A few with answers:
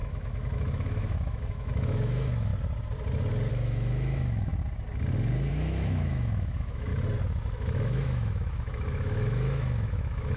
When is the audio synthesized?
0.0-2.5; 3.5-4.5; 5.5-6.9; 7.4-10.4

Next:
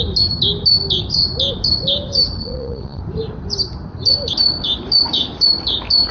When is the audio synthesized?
2.4-3.0

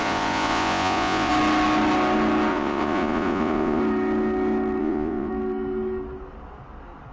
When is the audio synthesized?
0.0-1.3; 2.5-3.8; 4.8-5.3

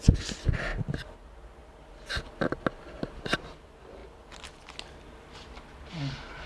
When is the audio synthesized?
none

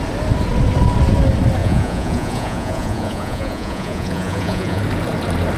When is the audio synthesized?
1.6-4.8

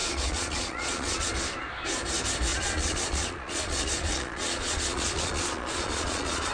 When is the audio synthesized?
0.0-1.3; 2.5-6.5

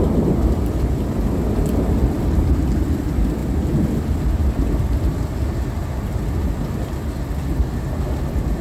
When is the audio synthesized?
none